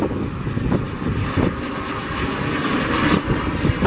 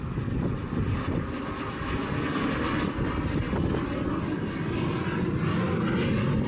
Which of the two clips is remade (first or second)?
first